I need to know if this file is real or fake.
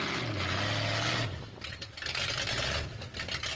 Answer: real